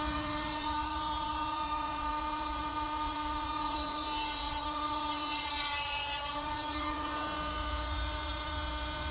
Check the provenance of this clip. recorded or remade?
remade